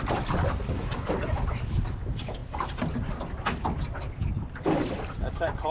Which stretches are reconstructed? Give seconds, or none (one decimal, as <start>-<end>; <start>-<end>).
none

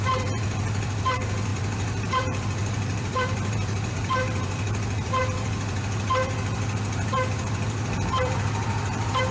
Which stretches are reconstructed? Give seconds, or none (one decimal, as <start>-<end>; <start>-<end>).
0.0-9.3

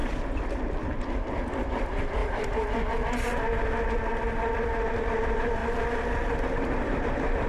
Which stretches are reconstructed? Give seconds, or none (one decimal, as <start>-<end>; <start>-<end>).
0.7-2.2; 3.9-5.6; 6.5-7.5

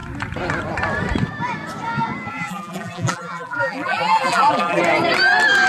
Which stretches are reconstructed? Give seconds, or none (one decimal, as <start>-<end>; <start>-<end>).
2.3-4.8

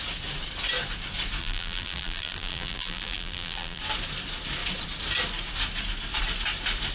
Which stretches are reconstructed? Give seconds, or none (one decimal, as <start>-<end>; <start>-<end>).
1.4-3.8